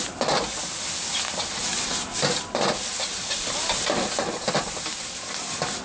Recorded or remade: recorded